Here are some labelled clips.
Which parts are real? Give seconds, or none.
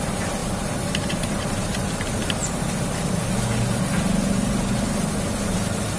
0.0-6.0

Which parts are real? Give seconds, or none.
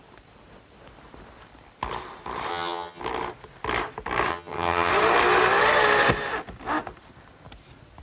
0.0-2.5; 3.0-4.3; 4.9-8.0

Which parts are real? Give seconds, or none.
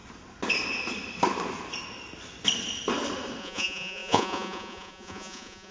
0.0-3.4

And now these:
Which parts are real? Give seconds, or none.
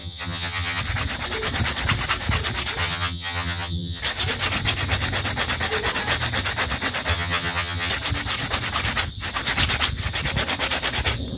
0.8-2.8; 4.0-7.1; 7.9-11.4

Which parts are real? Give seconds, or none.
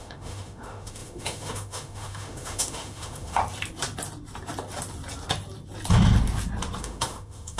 3.4-6.8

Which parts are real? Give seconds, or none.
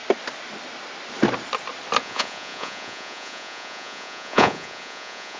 0.0-2.0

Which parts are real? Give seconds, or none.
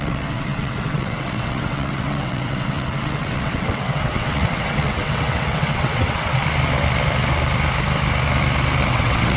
6.4-8.9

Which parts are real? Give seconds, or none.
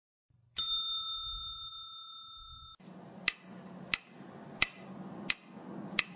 0.0-6.2